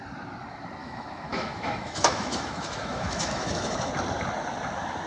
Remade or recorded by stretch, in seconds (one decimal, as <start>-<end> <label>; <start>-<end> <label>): 0.0-0.8 recorded; 0.8-3.9 remade; 3.9-5.1 recorded